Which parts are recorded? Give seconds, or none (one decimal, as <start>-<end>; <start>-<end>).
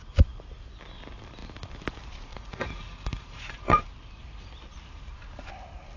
0.0-2.3; 3.9-6.0